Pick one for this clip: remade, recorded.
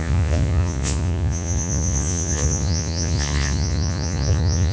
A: remade